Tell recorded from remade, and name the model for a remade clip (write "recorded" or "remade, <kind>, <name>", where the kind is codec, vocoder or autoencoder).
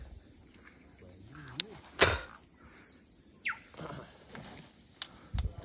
recorded